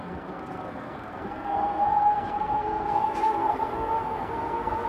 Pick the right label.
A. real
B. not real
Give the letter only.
B